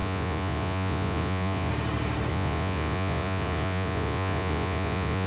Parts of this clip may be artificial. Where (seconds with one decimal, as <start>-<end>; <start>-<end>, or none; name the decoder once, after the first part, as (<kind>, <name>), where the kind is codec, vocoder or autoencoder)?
0.0-1.7 (vocoder, Vocos); 2.3-5.3